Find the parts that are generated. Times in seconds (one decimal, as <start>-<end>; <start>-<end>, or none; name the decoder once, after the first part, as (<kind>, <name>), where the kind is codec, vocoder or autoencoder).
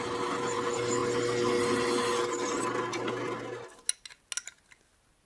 none